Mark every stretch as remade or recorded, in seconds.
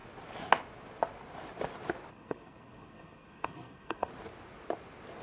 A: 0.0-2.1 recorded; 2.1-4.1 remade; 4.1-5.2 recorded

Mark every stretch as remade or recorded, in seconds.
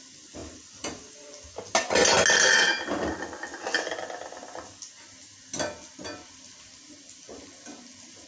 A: 0.0-8.3 recorded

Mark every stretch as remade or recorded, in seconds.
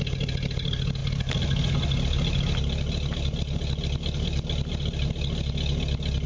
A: 0.0-6.3 recorded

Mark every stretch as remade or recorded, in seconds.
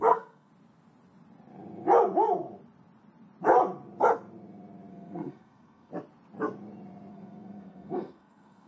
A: 0.0-0.5 remade; 0.5-4.9 recorded; 4.9-5.9 remade; 5.9-7.1 recorded; 7.1-8.7 remade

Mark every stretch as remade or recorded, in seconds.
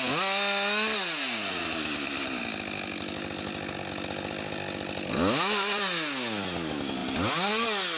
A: 0.0-8.0 recorded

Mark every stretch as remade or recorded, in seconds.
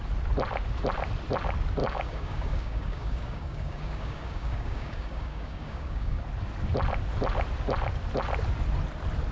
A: 0.0-1.8 recorded; 1.8-6.2 remade; 6.2-9.3 recorded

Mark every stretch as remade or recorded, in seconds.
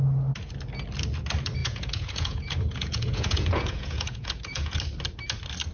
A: 0.0-1.6 recorded; 1.6-4.8 remade; 4.8-5.7 recorded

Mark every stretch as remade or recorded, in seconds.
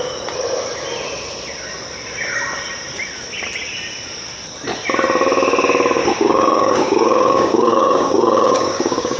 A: 0.0-6.0 recorded; 6.0-9.2 remade